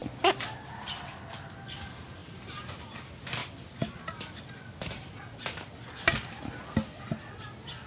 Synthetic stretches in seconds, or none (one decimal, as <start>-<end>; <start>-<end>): 2.2-2.8